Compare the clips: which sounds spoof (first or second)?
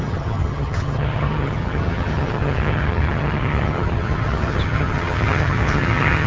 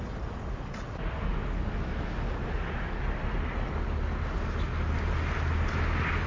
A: first